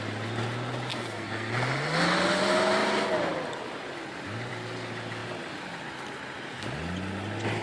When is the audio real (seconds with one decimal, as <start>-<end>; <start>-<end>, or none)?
0.0-0.9; 1.5-7.6